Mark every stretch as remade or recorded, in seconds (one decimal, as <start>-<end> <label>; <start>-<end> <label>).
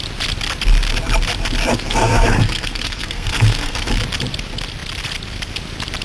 0.0-1.7 recorded; 1.7-3.9 remade; 3.9-6.0 recorded